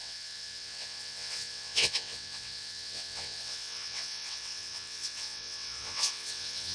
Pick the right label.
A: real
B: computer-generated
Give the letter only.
B